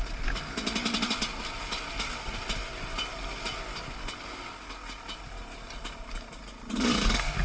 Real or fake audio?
real